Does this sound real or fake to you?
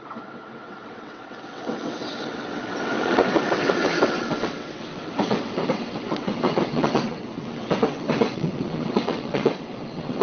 fake